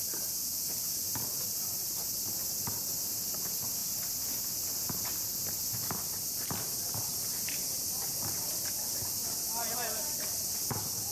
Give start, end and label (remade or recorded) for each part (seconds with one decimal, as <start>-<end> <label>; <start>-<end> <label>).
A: 0.0-11.1 recorded